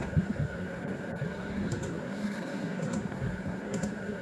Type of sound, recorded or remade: remade